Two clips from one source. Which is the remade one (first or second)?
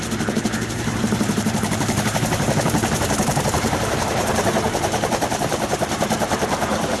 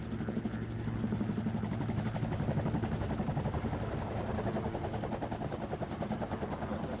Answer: first